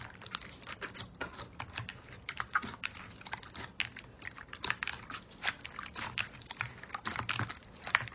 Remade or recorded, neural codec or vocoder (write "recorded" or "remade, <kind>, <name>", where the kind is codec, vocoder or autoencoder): recorded